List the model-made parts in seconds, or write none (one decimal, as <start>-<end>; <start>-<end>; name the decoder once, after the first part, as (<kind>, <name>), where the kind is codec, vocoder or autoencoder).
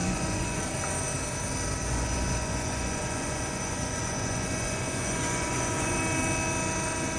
0.0-0.6 (vocoder, Vocos); 1.8-6.0